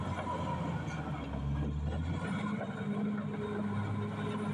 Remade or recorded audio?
recorded